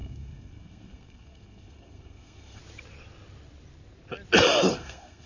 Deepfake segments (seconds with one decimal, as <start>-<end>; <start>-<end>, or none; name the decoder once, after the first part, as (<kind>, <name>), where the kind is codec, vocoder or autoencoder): 0.0-2.6 (codec, SNAC); 4.7-5.3